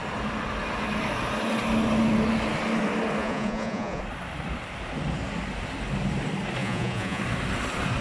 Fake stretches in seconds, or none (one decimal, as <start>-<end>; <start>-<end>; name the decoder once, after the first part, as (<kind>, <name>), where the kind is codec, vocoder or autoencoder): 3.2-4.0 (vocoder, Vocos); 6.6-7.2